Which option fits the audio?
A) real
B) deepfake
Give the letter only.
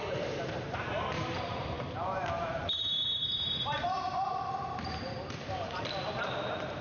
B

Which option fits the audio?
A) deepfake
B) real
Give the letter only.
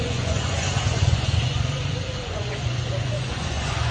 A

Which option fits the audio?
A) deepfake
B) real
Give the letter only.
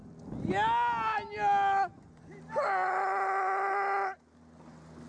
B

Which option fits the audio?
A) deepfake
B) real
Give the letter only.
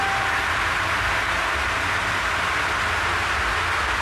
B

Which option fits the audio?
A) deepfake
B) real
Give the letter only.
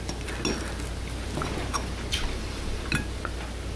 B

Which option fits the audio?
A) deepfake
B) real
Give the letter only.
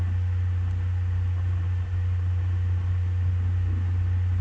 B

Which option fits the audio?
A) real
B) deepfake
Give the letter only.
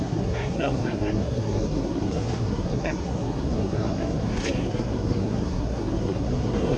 B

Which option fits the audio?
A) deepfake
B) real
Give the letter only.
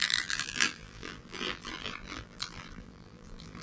A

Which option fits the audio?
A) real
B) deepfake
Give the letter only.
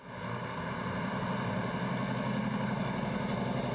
A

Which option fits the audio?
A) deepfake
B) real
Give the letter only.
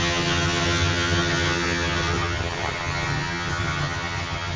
A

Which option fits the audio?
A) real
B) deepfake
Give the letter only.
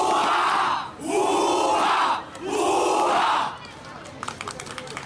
A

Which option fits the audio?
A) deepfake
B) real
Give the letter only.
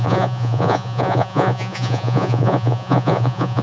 A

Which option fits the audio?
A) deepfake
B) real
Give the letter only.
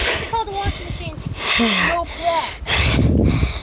B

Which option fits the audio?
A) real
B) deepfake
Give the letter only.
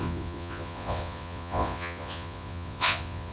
B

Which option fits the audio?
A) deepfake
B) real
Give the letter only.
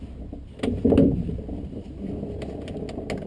B